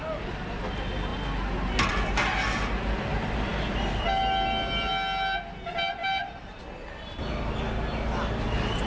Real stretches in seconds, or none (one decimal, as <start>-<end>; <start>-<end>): 0.0-6.0; 6.6-8.9